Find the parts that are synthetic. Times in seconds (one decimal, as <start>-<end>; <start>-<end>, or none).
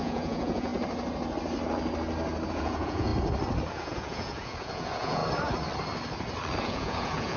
0.0-0.7; 2.5-3.1; 3.7-5.2; 6.6-7.4